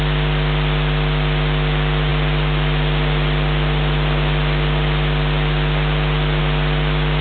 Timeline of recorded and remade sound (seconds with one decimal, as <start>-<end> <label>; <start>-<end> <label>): 0.0-7.2 recorded